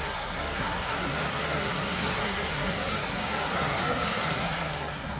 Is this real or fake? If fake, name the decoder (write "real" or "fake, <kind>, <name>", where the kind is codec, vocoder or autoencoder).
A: fake, codec, SNAC